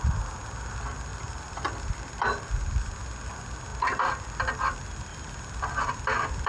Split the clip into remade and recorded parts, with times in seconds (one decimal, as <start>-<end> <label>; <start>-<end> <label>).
0.0-1.1 recorded; 1.1-2.5 remade; 2.5-5.1 recorded; 5.1-6.5 remade